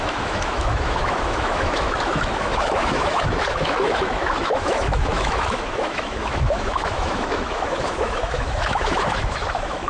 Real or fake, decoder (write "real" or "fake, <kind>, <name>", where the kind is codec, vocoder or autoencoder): fake, autoencoder, DAC-VAE